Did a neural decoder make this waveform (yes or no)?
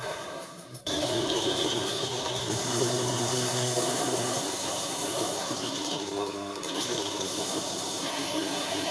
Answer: yes